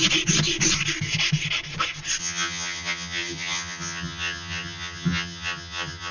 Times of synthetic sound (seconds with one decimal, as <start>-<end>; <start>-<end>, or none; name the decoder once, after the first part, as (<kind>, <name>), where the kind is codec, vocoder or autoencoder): 2.2-6.1 (vocoder, HiFi-GAN)